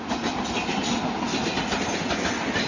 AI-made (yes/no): no